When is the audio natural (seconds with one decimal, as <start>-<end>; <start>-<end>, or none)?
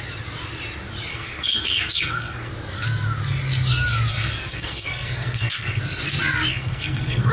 0.0-1.1; 2.5-4.1; 5.8-6.5